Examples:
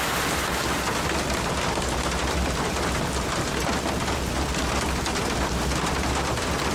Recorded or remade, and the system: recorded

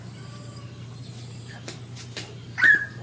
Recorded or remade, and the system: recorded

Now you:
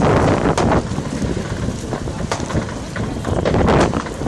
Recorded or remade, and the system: remade, vocoder, BigVGAN v2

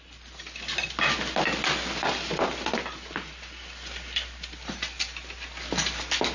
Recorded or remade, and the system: recorded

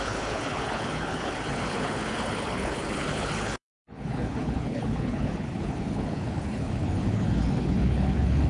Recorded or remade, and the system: remade, codec, HILCodec